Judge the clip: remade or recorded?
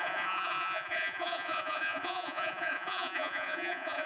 remade